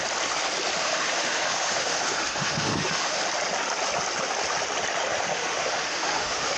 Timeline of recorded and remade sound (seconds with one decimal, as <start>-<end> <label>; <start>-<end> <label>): 0.0-0.8 recorded; 0.8-3.2 remade; 3.2-5.3 recorded; 5.3-6.6 remade